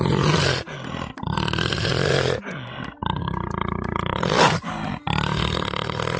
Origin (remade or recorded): recorded